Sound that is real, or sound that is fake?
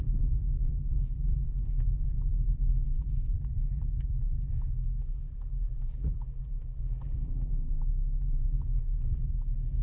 fake